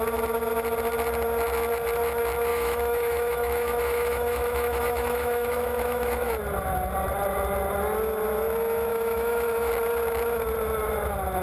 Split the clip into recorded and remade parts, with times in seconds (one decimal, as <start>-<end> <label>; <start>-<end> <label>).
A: 0.0-2.5 recorded; 2.5-6.4 remade; 6.4-8.9 recorded; 8.9-9.7 remade; 9.7-11.4 recorded